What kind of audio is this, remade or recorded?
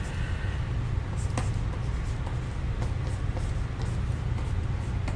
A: remade